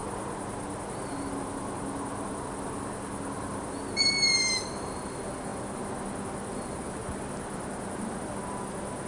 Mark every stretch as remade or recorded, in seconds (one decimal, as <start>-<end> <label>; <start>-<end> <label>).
0.0-4.7 remade; 4.7-5.5 recorded; 5.5-6.5 remade; 6.5-7.0 recorded; 7.0-7.9 remade; 7.9-9.1 recorded